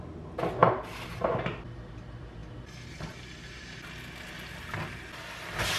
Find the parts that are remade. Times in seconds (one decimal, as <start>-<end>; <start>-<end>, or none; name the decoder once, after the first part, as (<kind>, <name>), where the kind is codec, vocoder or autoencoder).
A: 0.6-1.6 (vocoder, BigVGAN v2)